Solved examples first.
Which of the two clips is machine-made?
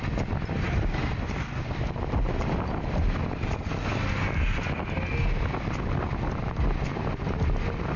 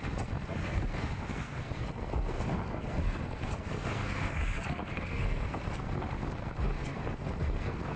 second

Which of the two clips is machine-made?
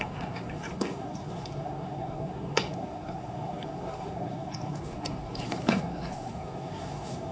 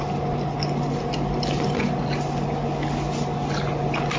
first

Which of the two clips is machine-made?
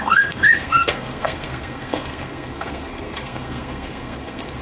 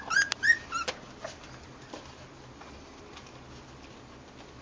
first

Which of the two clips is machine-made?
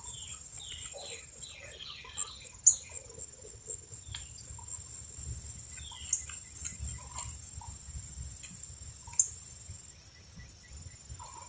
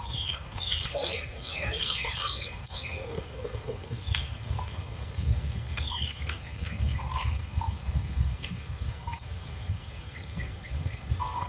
second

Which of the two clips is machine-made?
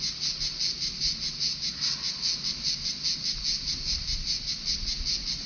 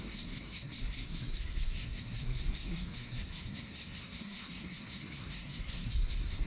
second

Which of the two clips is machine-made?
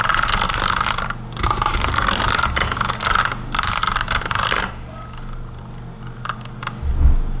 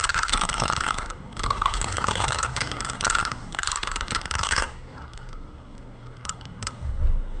second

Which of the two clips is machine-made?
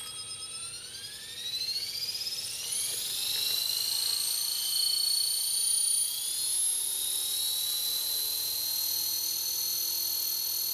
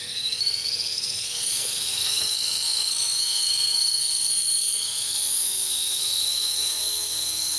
second